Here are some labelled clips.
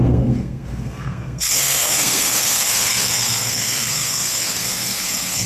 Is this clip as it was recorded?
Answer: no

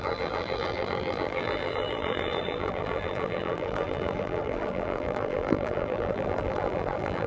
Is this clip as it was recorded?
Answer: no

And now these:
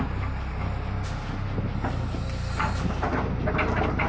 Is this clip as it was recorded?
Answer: yes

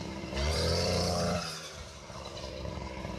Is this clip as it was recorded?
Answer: no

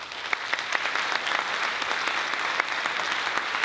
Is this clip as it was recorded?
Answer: yes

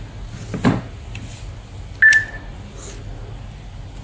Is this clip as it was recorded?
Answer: yes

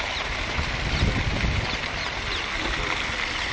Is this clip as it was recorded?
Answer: yes